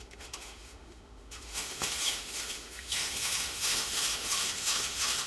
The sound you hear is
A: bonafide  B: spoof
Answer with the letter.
B